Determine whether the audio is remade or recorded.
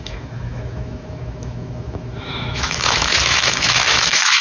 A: remade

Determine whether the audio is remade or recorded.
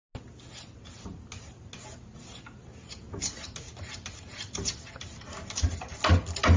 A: recorded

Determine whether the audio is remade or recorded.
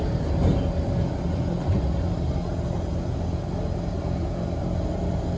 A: recorded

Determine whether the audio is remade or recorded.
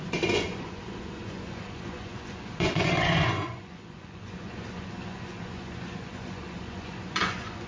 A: remade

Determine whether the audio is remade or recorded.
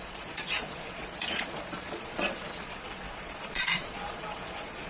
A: remade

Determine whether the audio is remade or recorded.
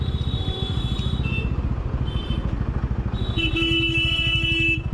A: recorded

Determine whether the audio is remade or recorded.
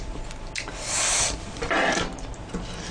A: recorded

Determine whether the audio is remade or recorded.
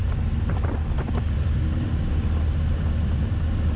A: remade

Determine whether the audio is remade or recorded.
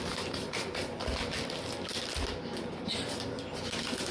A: recorded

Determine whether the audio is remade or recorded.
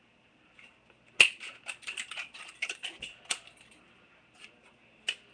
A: recorded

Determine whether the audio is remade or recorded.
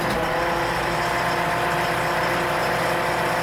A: recorded